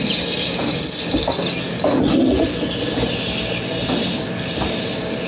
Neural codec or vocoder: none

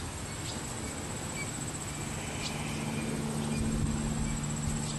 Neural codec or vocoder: none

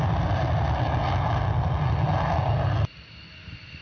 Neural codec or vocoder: none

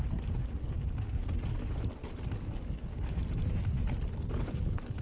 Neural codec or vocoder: none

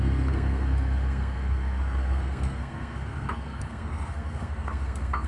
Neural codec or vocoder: codec, SNAC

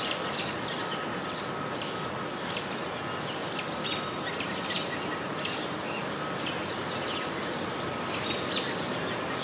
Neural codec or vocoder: none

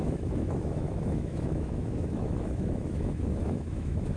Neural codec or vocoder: autoencoder, DAC-VAE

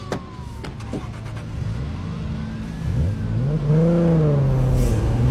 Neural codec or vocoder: none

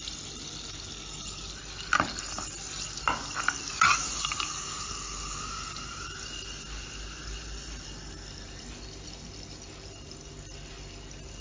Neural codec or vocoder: none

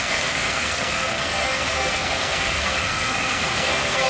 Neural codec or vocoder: codec, SNAC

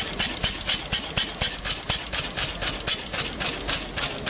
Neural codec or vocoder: none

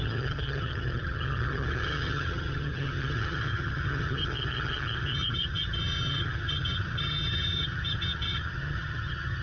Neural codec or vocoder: vocoder, HiFi-GAN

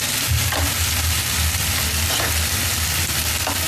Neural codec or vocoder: none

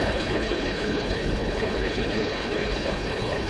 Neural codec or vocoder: codec, HILCodec